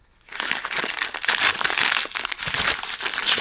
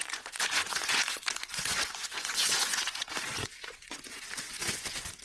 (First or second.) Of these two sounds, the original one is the first